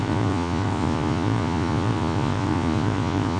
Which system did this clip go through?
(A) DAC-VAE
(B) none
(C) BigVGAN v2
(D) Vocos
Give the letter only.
D